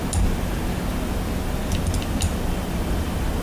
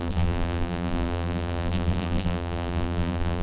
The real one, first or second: first